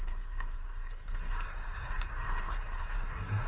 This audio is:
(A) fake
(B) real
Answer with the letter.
A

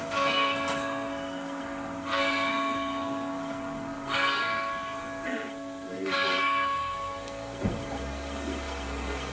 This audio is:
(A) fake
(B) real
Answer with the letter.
A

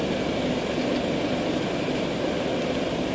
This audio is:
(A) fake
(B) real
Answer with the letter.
B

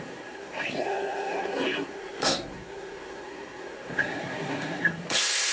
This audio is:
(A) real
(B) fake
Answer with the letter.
B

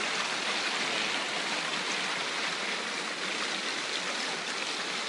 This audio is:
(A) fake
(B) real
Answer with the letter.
B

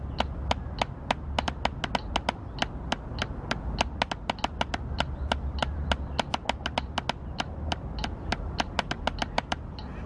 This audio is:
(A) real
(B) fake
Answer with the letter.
A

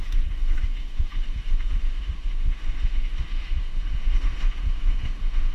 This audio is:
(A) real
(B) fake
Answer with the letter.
B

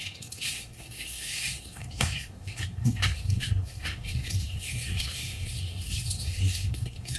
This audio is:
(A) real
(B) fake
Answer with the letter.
B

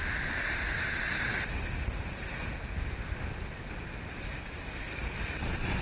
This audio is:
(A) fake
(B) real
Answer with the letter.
B